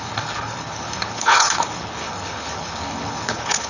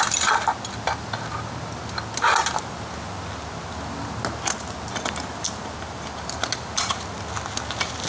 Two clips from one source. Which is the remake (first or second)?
first